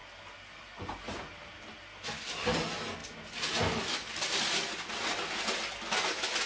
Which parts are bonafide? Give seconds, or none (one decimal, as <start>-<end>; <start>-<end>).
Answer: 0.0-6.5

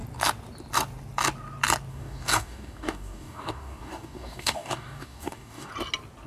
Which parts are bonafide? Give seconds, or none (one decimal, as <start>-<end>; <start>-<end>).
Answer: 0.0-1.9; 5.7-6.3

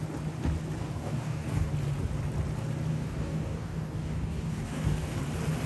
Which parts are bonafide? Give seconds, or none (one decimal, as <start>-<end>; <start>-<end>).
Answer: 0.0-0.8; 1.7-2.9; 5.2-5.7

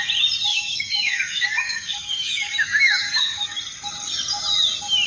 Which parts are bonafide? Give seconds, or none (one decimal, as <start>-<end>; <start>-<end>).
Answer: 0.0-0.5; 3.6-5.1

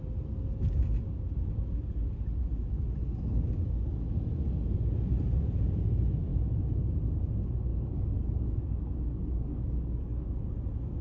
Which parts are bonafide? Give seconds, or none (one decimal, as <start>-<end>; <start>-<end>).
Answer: 0.0-7.7; 10.3-11.0